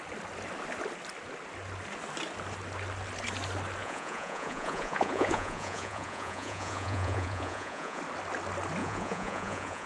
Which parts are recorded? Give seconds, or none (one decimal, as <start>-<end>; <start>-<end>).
0.0-3.8; 8.0-8.8